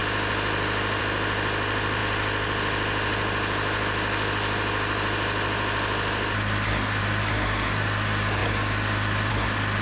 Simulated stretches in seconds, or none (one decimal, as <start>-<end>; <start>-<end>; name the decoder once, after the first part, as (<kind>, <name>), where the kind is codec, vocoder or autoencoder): none